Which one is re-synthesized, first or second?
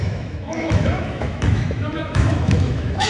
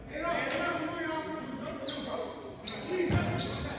first